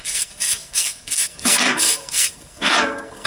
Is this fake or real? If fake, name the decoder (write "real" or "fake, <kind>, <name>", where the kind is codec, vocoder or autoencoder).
fake, codec, SNAC